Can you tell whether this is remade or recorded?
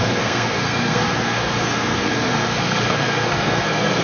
remade